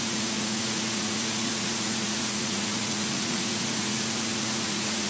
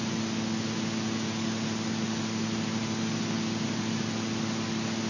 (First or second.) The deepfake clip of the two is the first